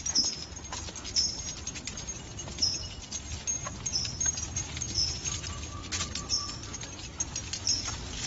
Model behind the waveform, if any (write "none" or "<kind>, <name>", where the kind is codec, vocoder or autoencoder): none